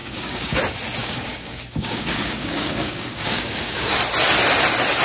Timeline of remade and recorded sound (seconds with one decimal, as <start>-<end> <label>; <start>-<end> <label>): 0.0-0.6 remade; 0.6-1.0 recorded; 1.0-4.0 remade; 4.0-5.0 recorded